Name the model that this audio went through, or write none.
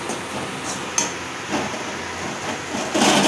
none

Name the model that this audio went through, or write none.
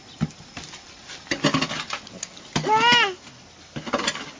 none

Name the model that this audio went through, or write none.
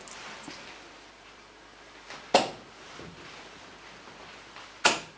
none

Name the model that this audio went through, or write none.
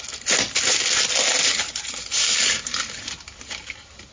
none